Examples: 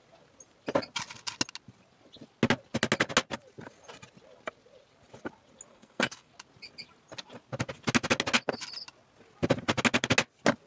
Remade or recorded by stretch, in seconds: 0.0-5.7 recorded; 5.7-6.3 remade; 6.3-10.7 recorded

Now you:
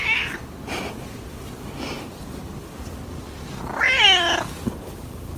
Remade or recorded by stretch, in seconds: 0.0-5.4 recorded

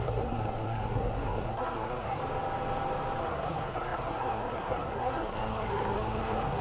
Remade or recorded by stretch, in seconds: 0.0-2.2 remade; 2.2-3.2 recorded; 3.2-6.6 remade

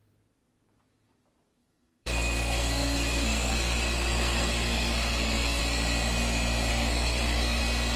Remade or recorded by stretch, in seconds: 0.0-1.6 recorded; 1.6-5.6 remade; 5.6-6.7 recorded; 6.7-7.6 remade; 7.6-8.0 recorded

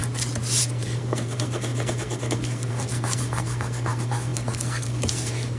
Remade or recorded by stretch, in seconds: 0.0-0.6 recorded; 0.6-5.6 remade

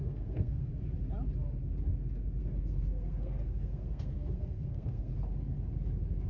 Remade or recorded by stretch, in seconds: 0.0-0.7 remade; 0.7-2.4 recorded; 2.4-5.1 remade; 5.1-6.3 recorded